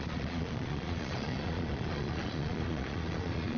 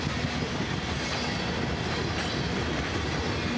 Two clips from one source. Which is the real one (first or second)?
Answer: second